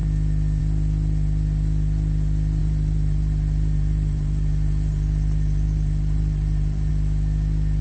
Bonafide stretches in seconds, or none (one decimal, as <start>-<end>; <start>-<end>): 0.0-2.6; 6.9-7.8